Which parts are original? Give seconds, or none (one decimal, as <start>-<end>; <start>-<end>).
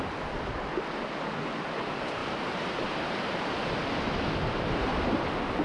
0.0-2.2; 3.6-5.6